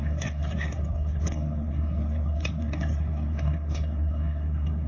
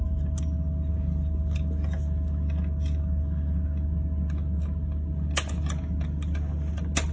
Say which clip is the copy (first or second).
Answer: first